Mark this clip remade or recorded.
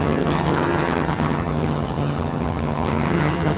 remade